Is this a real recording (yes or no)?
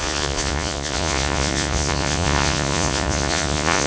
no